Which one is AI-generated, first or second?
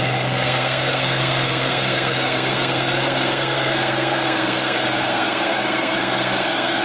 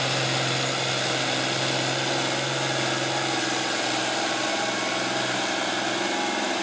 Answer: first